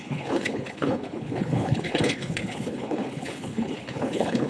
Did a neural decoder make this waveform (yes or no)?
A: yes